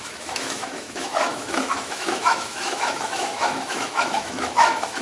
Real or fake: fake